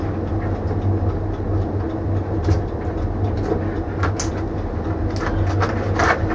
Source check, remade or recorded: recorded